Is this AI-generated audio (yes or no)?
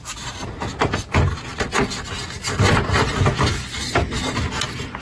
no